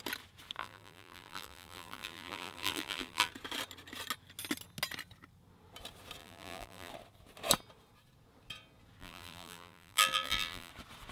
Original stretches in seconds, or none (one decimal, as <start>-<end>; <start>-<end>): 0.0-0.6; 3.3-6.2; 6.9-9.0; 10.7-11.1